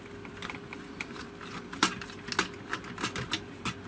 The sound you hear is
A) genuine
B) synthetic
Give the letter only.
A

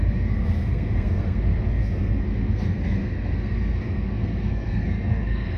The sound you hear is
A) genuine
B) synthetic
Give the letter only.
B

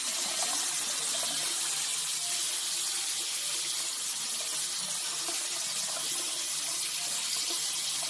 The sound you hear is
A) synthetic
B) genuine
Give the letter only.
B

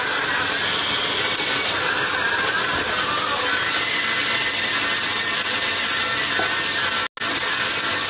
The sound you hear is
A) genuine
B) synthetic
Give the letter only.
A